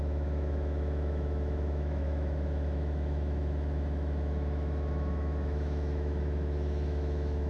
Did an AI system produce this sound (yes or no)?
yes